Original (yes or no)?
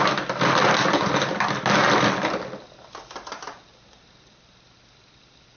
yes